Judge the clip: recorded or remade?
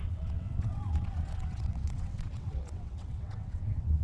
remade